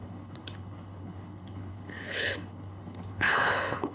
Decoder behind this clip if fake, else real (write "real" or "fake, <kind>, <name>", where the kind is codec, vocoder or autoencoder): fake, codec, HILCodec